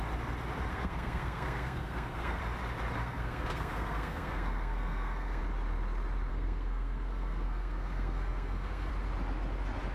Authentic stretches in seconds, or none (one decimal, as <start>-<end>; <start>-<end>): 0.0-0.7; 2.4-3.0; 5.4-6.3; 8.9-9.9